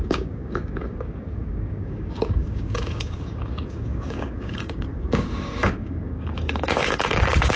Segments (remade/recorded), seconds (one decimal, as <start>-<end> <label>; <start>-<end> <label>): 0.0-7.6 remade